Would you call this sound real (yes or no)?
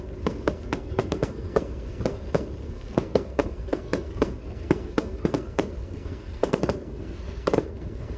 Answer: no